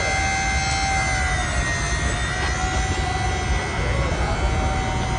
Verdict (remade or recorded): recorded